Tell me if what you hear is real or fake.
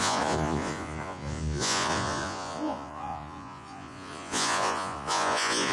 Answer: fake